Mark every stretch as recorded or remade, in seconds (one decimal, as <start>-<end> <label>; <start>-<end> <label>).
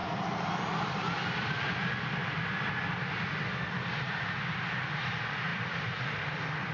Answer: 0.0-2.2 recorded; 2.2-3.5 remade; 3.5-5.5 recorded; 5.5-6.2 remade; 6.2-6.7 recorded